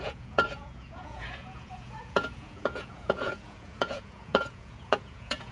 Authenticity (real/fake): fake